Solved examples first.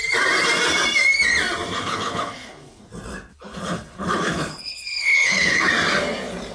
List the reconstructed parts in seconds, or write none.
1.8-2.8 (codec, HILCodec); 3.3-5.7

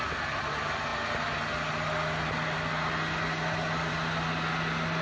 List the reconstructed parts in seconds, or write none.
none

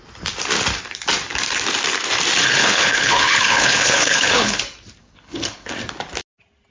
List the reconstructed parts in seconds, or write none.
2.6-4.6 (codec, HILCodec); 5.0-5.7

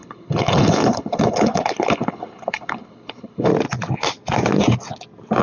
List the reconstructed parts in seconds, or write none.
0.0-3.5 (codec, HILCodec)